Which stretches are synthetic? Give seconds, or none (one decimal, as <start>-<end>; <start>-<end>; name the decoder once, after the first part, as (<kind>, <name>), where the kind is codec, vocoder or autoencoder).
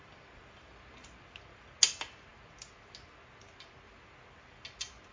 none